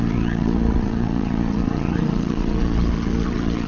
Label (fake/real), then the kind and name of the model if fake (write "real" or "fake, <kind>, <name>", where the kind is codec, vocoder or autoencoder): fake, vocoder, Vocos